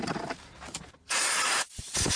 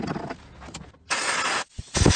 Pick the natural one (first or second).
second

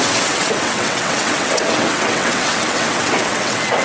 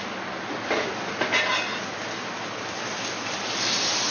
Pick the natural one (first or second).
second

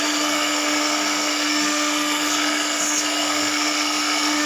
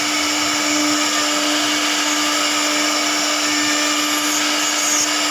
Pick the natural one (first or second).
second